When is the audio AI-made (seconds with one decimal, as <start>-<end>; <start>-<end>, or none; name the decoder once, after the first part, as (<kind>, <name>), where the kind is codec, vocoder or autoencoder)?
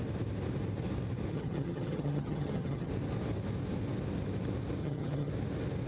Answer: 1.3-2.9 (vocoder, HiFi-GAN); 4.8-5.3